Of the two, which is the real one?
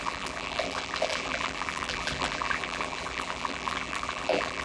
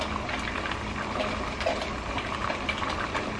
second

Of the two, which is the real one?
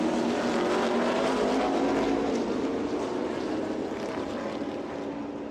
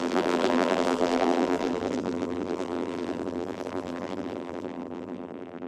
first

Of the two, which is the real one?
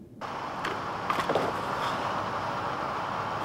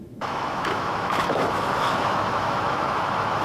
first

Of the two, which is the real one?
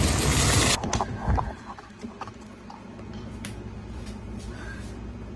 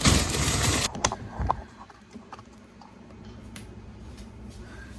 first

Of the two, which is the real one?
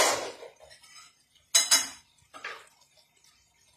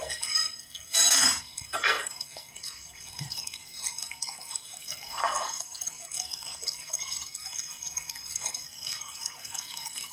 first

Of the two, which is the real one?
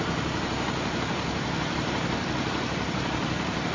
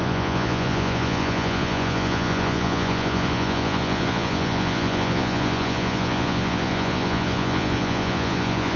first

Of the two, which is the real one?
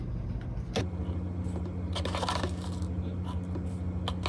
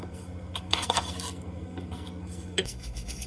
first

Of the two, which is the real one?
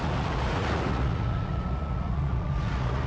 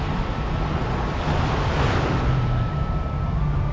second